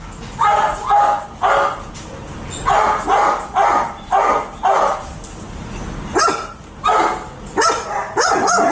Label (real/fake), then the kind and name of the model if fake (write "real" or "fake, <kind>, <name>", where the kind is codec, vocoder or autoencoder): real